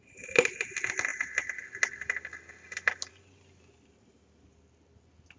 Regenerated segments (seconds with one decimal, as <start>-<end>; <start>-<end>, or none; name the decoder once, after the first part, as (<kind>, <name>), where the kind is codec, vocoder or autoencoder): none

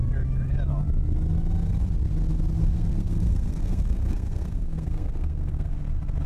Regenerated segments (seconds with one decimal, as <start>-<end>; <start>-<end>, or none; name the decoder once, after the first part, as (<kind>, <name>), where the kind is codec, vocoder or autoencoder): 2.6-5.7 (codec, SNAC)